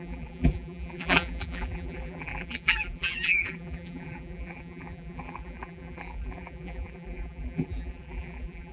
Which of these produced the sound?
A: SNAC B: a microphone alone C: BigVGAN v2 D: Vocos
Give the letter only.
C